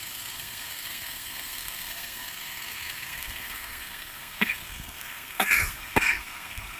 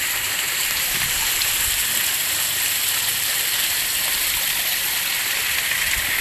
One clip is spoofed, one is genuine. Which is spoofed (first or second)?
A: first